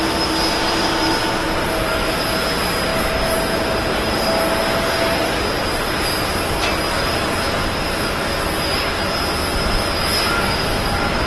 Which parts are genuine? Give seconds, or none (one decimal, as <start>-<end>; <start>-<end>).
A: 0.0-11.3